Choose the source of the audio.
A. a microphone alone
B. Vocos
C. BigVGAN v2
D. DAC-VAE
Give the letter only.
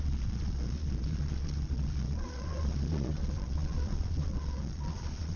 B